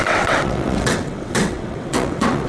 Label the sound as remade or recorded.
remade